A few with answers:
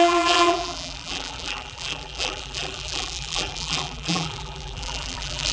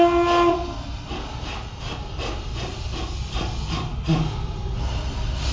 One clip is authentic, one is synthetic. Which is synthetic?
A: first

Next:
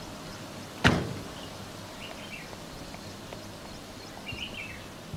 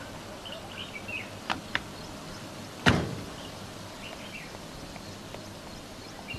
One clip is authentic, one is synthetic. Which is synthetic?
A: second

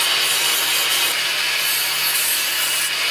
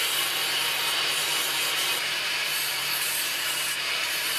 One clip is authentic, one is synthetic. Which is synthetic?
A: second